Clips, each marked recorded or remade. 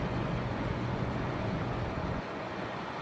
remade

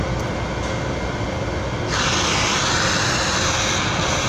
recorded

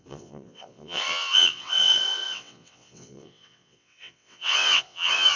remade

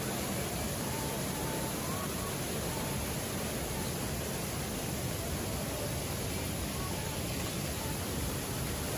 recorded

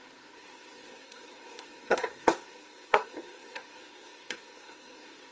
remade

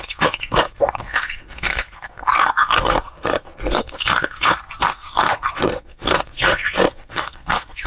remade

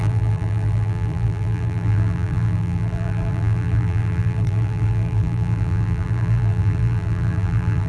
remade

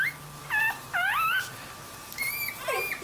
recorded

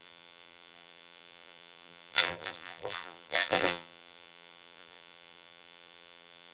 remade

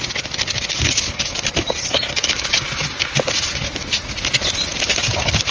recorded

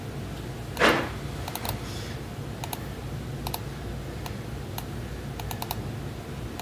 recorded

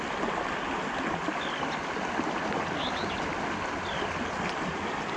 recorded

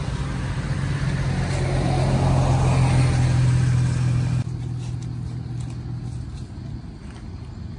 recorded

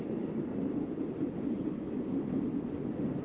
recorded